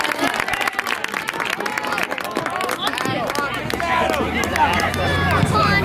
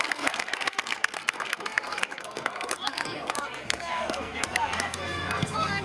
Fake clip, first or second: second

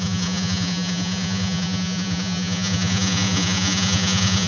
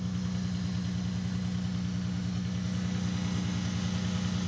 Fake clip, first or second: first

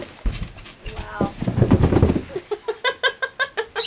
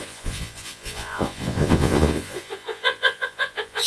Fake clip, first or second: second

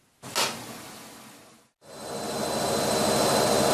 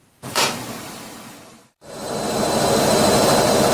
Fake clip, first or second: second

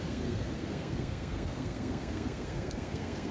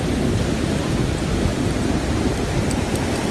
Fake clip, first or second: first